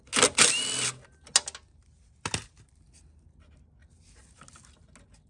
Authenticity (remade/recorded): recorded